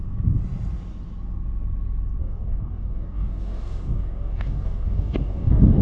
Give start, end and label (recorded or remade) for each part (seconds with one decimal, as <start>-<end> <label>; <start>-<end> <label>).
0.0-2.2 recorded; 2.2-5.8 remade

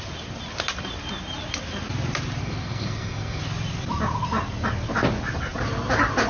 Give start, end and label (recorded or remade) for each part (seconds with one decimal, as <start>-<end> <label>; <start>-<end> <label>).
0.0-2.4 recorded; 2.4-3.4 remade; 3.4-6.3 recorded

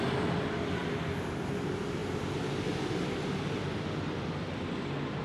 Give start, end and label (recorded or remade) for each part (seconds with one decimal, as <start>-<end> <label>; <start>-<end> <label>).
0.0-5.2 recorded

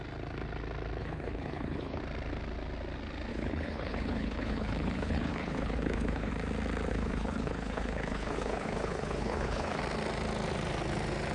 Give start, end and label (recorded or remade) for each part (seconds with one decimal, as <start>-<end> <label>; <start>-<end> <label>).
0.0-1.0 recorded; 1.0-2.0 remade; 2.0-3.3 recorded; 3.3-6.3 remade; 6.3-6.9 recorded; 6.9-9.8 remade; 9.8-11.3 recorded

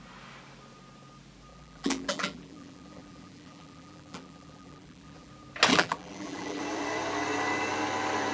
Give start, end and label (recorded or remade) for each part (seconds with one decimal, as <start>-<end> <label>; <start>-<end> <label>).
0.0-1.5 recorded; 1.5-5.3 remade; 5.3-5.7 recorded; 5.7-6.6 remade; 6.6-8.3 recorded